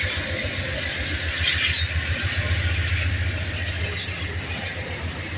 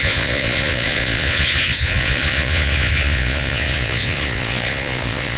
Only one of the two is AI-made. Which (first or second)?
second